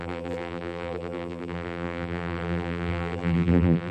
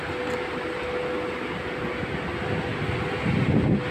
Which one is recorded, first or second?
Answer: second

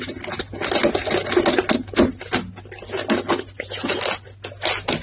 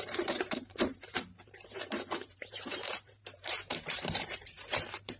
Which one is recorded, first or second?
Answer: first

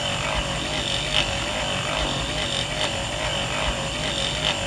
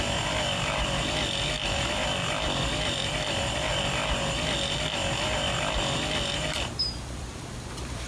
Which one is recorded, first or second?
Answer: first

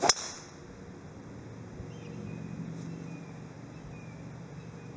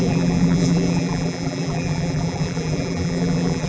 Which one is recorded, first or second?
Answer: first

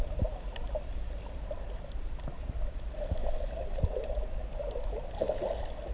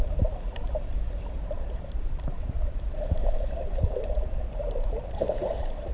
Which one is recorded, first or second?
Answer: first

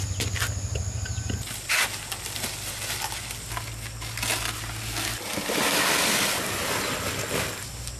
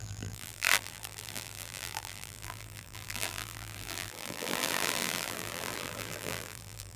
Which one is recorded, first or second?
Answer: first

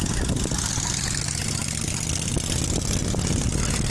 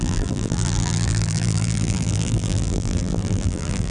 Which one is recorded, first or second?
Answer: first